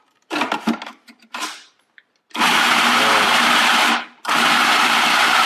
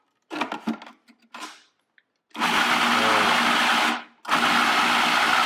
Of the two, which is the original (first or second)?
second